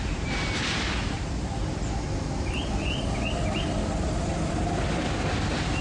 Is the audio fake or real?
real